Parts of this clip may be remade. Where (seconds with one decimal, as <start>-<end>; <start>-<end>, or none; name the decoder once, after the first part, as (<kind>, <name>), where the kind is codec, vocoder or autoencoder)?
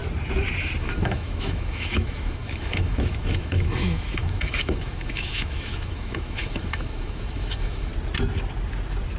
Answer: 0.8-7.9 (autoencoder, DAC-VAE)